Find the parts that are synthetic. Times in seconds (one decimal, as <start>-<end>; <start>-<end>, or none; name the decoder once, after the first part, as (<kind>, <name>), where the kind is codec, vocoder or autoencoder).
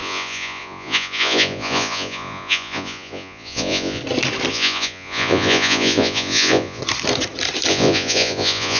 0.0-4.0 (vocoder, Vocos); 4.5-6.8; 7.7-8.8